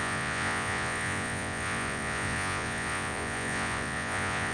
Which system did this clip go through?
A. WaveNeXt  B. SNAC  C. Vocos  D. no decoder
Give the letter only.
C